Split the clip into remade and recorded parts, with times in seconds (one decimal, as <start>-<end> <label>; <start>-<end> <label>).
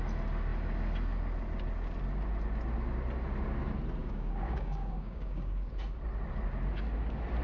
0.0-4.0 recorded; 4.0-5.7 remade; 5.7-7.4 recorded